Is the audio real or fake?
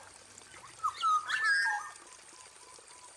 real